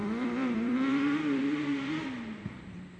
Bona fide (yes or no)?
no